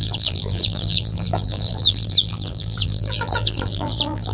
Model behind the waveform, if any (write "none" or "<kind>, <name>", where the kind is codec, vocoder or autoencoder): vocoder, BigVGAN v2